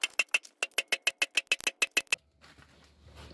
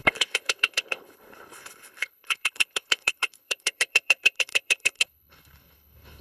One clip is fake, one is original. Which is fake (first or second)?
second